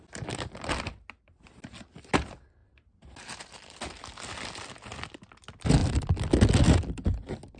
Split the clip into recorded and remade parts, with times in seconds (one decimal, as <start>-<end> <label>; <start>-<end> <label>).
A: 0.0-7.6 recorded